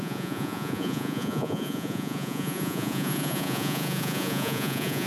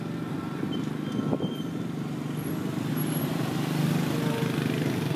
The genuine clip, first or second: second